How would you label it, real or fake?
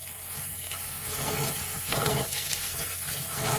fake